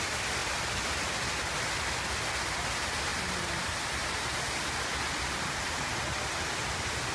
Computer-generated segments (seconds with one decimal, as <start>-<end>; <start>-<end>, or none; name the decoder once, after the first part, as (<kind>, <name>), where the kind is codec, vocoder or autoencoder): none